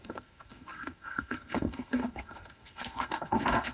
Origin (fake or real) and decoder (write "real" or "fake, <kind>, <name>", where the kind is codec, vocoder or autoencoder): fake, codec, SNAC